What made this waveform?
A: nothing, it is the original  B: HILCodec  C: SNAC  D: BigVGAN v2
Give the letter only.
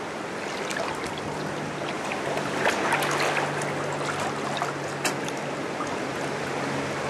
A